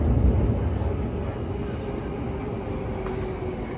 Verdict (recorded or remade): recorded